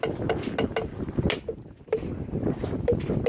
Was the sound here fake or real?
real